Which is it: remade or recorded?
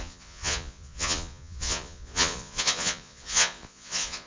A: remade